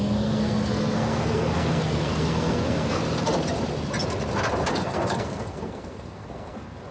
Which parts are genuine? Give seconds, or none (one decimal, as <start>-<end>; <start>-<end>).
3.0-4.7